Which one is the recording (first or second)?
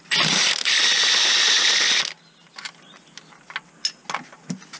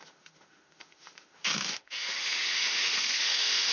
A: first